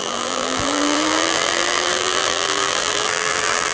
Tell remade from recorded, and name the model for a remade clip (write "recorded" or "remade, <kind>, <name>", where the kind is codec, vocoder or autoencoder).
remade, vocoder, BigVGAN v2